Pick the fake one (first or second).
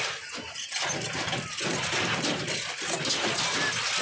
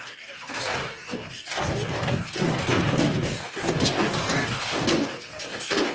second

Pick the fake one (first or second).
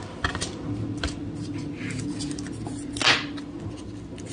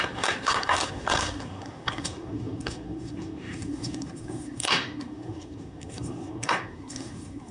second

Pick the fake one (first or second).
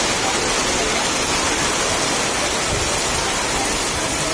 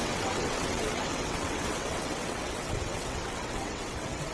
second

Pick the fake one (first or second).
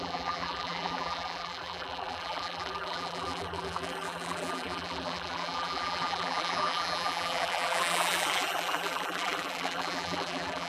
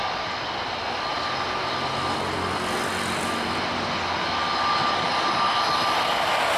first